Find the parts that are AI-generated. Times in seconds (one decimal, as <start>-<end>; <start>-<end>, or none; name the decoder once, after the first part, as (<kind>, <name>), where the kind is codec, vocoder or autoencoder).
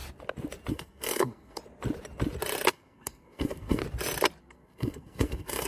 0.7-1.6 (codec, SNAC); 2.7-3.8; 4.4-5.7